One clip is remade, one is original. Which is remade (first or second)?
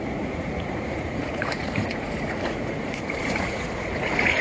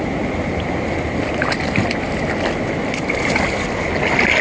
first